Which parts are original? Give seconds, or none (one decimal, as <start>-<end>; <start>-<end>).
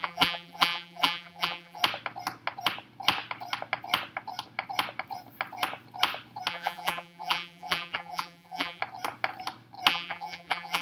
1.8-6.5; 8.8-9.9